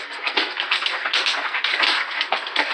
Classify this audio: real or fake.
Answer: fake